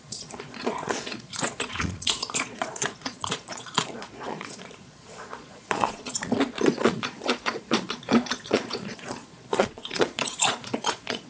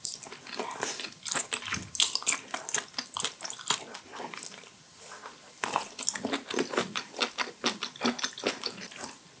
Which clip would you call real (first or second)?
second